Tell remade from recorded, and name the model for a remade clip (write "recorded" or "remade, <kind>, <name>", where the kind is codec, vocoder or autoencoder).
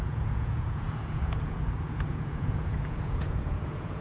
remade, vocoder, Vocos